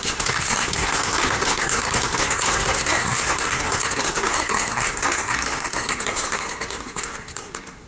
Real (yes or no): no